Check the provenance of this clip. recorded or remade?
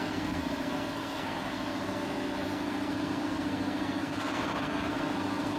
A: remade